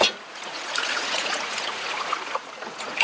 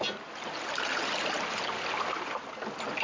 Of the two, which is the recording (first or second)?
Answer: second